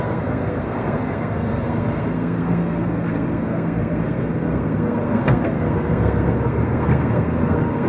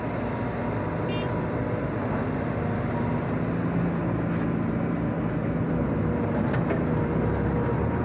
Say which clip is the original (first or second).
second